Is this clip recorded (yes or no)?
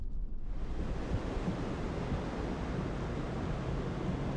yes